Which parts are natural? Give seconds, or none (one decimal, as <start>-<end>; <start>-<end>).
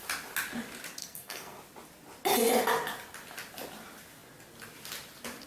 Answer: 0.0-1.0; 1.6-5.5